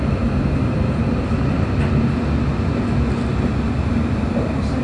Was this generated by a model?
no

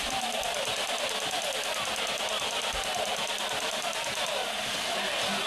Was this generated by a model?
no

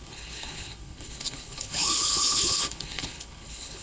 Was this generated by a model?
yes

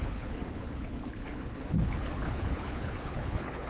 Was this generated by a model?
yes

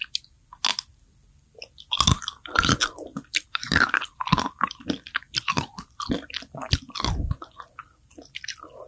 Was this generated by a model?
no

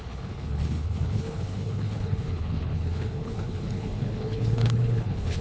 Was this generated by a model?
yes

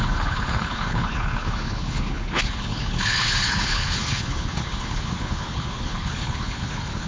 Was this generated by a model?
yes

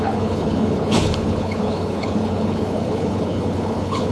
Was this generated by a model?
yes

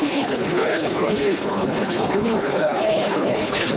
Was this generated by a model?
yes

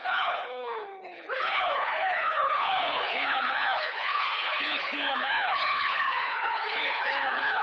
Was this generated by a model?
yes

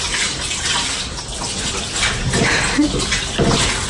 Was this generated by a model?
no